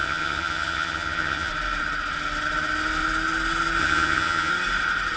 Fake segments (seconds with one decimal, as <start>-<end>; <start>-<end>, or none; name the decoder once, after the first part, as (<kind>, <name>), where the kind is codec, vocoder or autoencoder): 0.0-1.5 (vocoder, HiFi-GAN); 3.8-4.5